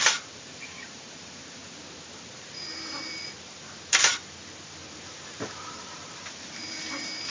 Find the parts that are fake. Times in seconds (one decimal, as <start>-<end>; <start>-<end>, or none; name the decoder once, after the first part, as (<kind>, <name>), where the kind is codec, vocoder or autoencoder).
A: 0.0-1.6 (vocoder, BigVGAN v2); 2.3-7.3